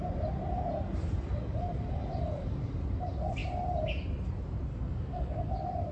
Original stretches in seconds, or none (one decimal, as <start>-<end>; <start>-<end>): 0.0-4.7; 5.5-5.9

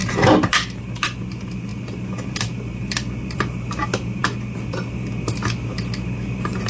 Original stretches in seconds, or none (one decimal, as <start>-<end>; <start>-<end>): 4.2-6.7

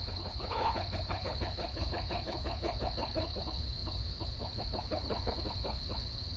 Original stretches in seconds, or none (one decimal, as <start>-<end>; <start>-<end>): none

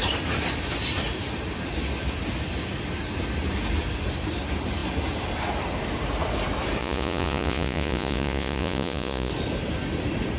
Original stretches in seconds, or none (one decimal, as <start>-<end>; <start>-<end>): 0.0-6.8; 9.3-10.4

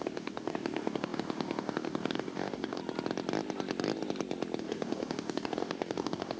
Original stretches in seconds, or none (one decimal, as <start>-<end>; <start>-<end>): 2.8-4.6

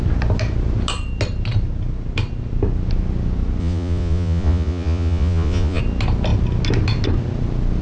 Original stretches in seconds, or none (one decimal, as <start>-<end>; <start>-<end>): 0.0-3.6; 5.8-7.8

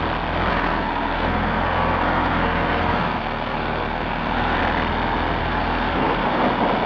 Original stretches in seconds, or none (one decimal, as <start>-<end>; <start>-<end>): 0.0-0.5; 4.6-5.4; 6.4-6.9

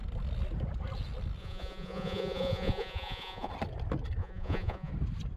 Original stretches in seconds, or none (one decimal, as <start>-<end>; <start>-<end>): 0.0-1.4; 3.5-4.2; 4.9-5.4